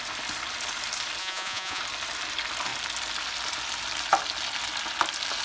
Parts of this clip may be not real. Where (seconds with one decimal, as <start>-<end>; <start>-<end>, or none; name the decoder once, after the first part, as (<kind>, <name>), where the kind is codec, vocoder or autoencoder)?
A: 1.2-1.8 (vocoder, Vocos)